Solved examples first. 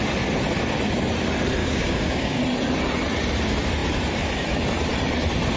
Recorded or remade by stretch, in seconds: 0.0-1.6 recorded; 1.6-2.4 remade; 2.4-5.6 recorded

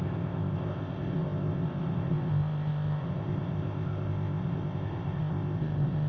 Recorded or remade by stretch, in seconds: 0.0-6.1 remade

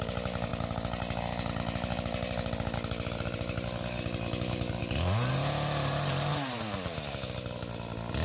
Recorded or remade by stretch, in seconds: 0.0-8.2 recorded